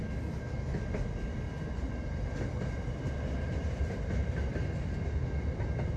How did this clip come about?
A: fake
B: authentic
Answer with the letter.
B